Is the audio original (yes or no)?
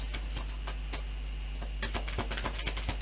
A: yes